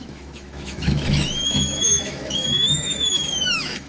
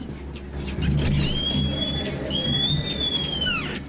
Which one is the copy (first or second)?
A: first